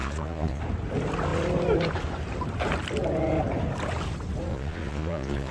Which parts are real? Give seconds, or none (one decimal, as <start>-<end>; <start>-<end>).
0.6-4.5